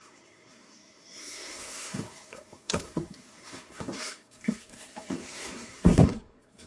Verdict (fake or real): fake